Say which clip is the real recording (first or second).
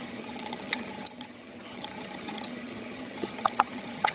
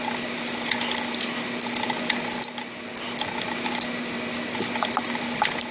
second